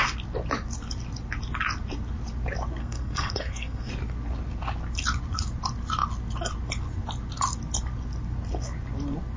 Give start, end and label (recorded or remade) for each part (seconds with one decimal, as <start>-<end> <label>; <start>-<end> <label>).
0.0-2.8 recorded; 2.8-3.9 remade; 3.9-9.4 recorded